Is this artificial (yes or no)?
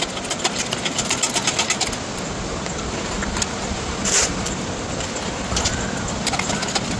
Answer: no